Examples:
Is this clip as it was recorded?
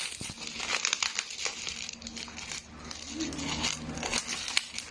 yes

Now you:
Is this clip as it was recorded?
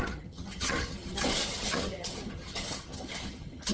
no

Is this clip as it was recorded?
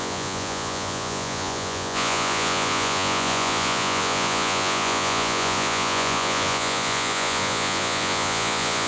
no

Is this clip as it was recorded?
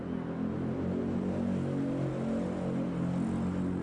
yes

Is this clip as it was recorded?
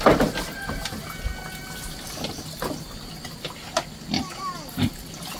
yes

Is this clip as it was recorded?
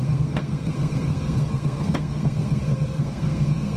no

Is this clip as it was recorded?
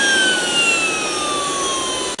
yes